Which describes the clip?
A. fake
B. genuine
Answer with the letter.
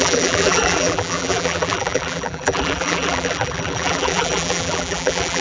A